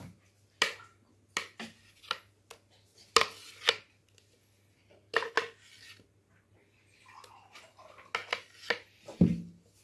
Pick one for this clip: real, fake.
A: real